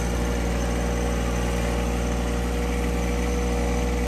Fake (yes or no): no